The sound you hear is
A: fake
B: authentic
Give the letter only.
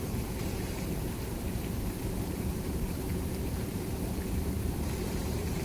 A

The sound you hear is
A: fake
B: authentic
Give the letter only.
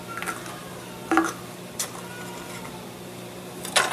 B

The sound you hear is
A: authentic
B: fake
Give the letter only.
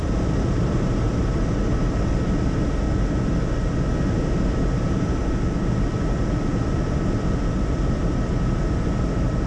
B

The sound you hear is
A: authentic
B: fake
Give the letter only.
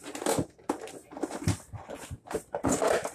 A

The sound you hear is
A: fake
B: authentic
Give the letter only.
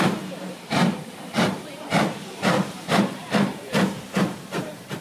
A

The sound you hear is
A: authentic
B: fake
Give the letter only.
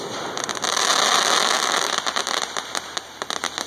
A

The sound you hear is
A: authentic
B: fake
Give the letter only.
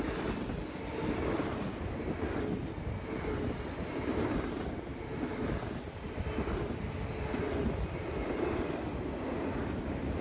A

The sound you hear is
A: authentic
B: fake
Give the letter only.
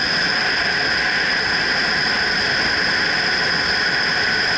A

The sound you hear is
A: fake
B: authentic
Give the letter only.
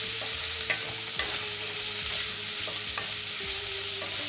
B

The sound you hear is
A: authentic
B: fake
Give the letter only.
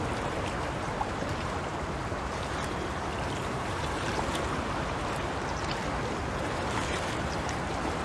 B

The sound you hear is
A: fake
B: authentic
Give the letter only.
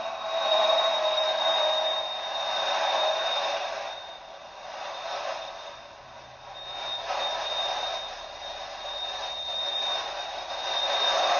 A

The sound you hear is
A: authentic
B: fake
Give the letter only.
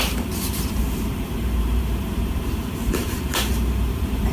B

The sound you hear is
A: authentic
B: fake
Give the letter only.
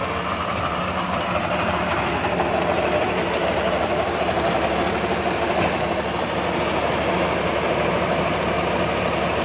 A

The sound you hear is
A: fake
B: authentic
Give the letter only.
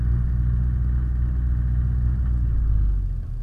B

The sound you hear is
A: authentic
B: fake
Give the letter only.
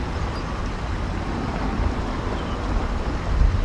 A